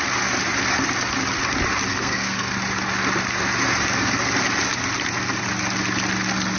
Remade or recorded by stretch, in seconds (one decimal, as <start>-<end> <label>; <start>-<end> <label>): 0.0-1.9 recorded; 1.9-2.5 remade; 2.5-6.6 recorded